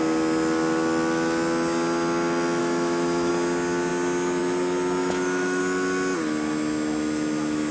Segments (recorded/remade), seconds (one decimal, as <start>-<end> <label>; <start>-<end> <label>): 0.0-2.6 recorded; 2.6-3.3 remade; 3.3-5.0 recorded; 5.0-5.6 remade; 5.6-7.7 recorded